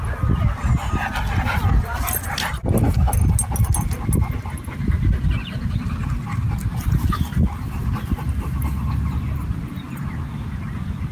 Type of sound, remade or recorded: recorded